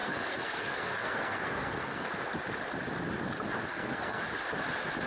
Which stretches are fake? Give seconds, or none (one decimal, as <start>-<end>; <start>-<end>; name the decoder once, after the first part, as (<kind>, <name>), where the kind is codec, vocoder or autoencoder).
0.0-2.1 (codec, SNAC); 3.7-4.2